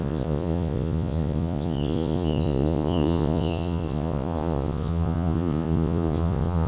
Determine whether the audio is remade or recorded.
remade